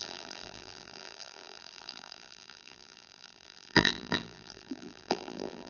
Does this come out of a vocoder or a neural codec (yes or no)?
yes